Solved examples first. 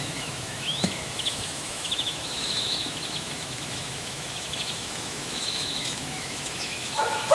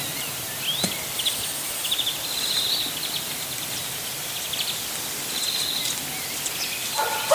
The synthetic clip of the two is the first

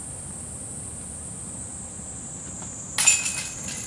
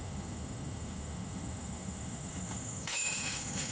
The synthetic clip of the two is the second